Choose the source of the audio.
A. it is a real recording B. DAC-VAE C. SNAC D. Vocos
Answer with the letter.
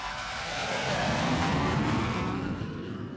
C